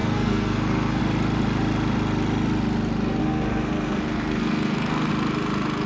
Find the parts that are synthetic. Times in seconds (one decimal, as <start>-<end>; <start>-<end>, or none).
0.0-1.0; 3.2-5.1